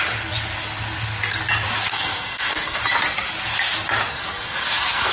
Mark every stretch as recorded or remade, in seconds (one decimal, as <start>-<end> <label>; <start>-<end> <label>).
0.0-1.9 recorded; 1.9-2.8 remade; 2.8-4.1 recorded; 4.1-5.1 remade